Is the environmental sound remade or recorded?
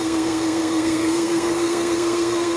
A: remade